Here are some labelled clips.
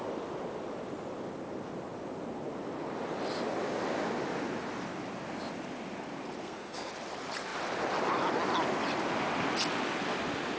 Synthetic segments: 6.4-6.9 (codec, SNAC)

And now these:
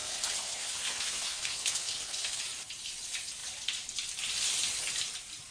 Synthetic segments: 0.0-2.4 (codec, SNAC)